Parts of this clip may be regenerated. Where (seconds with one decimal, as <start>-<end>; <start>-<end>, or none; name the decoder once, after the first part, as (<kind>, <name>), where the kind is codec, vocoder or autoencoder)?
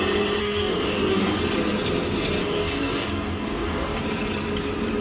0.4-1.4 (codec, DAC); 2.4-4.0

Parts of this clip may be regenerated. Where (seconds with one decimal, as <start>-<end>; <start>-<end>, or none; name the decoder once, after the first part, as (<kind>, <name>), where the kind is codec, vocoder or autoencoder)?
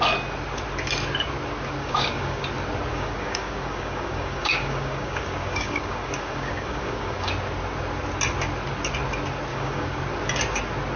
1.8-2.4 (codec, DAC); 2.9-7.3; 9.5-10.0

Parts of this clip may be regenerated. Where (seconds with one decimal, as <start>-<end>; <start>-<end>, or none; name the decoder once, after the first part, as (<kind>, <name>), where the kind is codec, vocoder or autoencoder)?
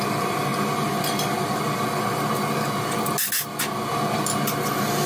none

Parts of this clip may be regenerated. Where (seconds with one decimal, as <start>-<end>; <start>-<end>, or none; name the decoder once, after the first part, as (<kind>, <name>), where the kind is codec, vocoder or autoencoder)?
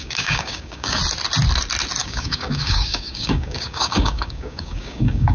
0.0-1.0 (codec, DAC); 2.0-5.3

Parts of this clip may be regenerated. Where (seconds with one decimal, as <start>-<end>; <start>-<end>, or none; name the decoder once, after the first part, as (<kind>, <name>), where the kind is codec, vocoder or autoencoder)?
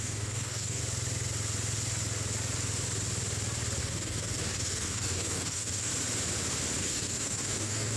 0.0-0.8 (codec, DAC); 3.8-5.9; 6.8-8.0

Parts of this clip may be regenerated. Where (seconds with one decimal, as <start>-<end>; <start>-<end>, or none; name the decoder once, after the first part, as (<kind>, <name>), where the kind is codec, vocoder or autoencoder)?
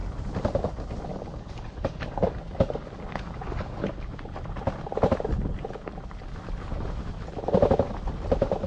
1.1-3.8 (codec, DAC)